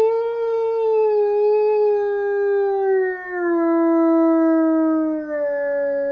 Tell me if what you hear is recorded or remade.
recorded